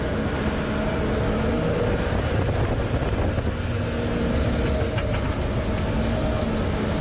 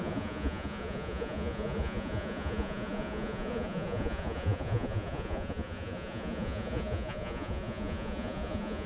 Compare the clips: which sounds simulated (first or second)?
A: second